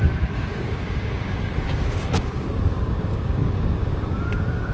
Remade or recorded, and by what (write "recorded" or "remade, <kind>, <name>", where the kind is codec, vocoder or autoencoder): remade, codec, DAC